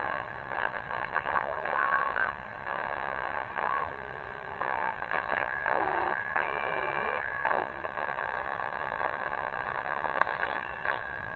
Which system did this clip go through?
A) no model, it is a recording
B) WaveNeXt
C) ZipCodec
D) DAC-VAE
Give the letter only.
B